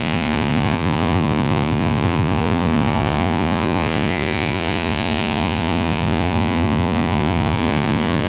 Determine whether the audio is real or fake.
fake